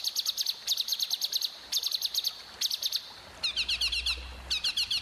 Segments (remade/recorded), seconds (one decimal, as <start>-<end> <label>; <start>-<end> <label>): 0.0-5.0 recorded

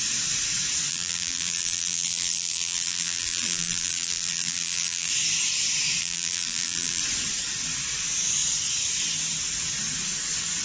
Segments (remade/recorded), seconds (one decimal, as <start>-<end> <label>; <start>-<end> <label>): 0.0-0.9 recorded; 0.9-5.1 remade; 5.1-6.0 recorded; 6.0-7.0 remade; 7.0-10.6 recorded

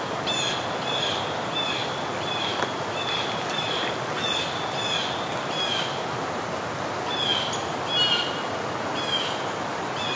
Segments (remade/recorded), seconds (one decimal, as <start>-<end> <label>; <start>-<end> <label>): 0.0-2.5 recorded; 2.5-3.9 remade; 3.9-10.2 recorded

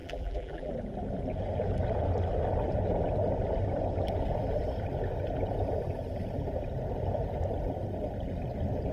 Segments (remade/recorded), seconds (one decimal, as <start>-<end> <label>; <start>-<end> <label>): 0.0-0.7 remade; 0.7-8.9 recorded

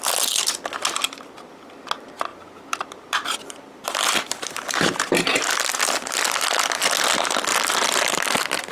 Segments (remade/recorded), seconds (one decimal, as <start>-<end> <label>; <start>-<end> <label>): 0.0-2.3 recorded; 2.3-6.2 remade; 6.2-7.5 recorded; 7.5-8.1 remade; 8.1-8.7 recorded

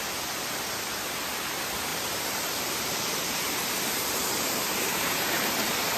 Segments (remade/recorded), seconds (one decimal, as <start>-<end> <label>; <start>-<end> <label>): 0.0-1.9 recorded; 1.9-5.5 remade; 5.5-6.0 recorded